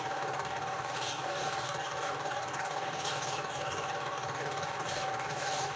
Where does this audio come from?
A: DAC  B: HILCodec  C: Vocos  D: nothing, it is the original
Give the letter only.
A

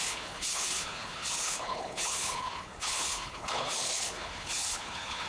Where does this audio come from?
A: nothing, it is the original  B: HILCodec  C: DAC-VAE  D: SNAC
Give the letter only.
B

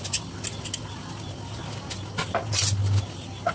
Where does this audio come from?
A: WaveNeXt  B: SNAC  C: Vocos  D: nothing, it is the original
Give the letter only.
D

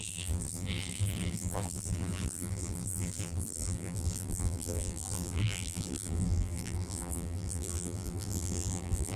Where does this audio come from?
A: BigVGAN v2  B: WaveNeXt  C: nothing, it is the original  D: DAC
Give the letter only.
A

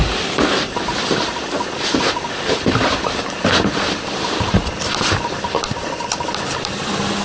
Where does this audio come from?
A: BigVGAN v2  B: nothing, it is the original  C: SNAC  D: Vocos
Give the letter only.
A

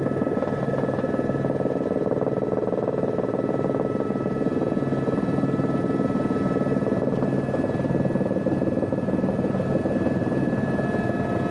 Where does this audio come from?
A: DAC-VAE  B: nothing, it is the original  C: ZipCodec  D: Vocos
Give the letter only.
B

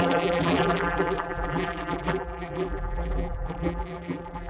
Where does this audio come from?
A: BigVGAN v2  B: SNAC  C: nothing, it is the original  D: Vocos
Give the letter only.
A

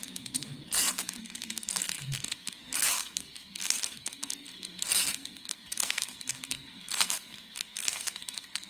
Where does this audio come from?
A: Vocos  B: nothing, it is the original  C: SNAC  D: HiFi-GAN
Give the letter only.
C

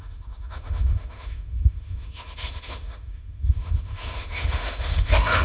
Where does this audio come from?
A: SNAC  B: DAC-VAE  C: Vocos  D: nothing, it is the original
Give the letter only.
B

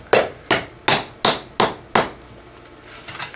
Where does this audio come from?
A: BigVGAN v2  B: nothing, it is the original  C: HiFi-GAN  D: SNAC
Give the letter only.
B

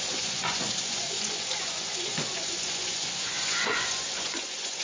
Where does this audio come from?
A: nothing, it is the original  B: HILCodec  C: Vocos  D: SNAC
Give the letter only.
C